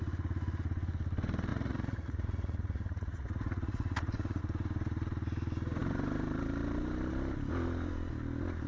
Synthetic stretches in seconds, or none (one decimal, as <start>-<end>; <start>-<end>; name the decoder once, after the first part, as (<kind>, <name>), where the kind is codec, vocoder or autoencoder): 1.5-4.4 (vocoder, Vocos)